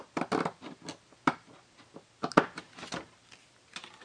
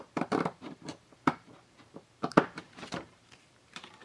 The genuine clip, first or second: first